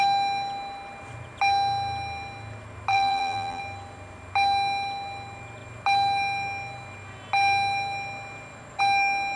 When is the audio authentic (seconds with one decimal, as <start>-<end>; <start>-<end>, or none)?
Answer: 0.0-2.9; 3.6-9.4